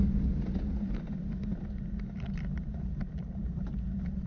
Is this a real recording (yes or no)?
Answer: yes